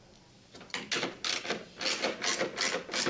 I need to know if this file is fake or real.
real